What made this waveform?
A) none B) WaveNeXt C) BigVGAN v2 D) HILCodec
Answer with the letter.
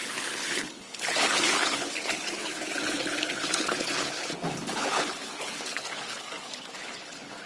D